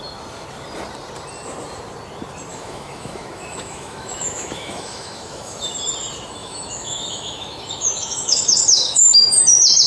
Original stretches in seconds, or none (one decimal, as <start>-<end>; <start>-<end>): 0.0-2.5; 5.7-6.4; 9.4-9.9